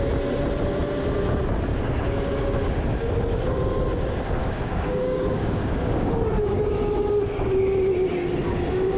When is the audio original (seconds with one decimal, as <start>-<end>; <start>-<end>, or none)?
0.0-1.7; 2.8-4.4; 6.7-9.0